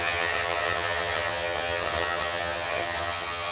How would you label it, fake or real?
fake